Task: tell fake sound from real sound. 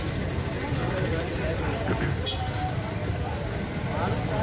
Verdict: real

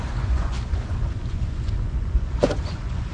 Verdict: fake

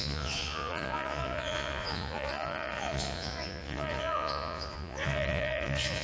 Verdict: fake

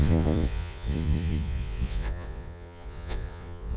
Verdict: fake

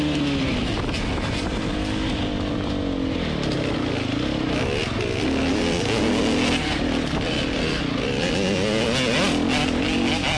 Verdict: real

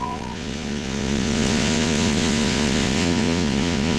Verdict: fake